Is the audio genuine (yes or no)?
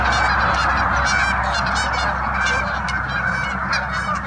yes